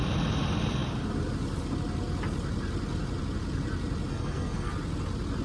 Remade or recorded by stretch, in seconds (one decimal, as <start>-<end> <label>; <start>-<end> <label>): 0.0-4.1 recorded; 4.1-4.7 remade; 4.7-5.4 recorded